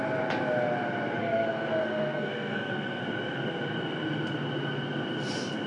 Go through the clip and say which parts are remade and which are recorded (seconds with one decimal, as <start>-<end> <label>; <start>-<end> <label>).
0.0-1.2 recorded; 1.2-3.0 remade; 3.0-5.7 recorded